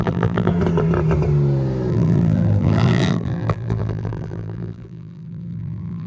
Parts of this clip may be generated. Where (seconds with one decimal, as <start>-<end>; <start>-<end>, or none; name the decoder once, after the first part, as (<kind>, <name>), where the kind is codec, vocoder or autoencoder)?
0.0-0.5 (vocoder, BigVGAN v2); 1.9-6.1